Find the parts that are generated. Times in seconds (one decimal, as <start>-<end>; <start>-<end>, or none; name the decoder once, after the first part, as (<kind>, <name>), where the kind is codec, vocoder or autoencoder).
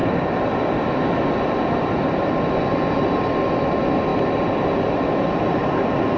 0.0-1.1 (vocoder, BigVGAN v2)